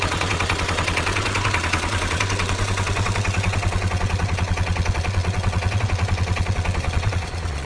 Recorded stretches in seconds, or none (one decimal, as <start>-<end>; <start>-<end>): none